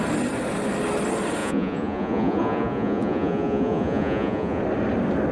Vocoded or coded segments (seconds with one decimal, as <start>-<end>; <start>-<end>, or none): 1.4-4.6